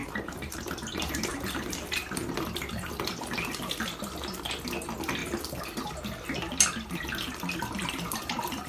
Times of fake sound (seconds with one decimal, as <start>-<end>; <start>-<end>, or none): 0.0-0.6; 1.3-2.3